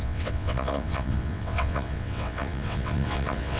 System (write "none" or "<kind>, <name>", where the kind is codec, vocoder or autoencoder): vocoder, WaveNeXt